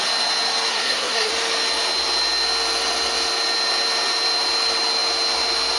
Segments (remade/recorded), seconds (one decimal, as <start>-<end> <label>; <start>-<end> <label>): 0.0-0.7 recorded; 0.7-1.3 remade; 1.3-5.8 recorded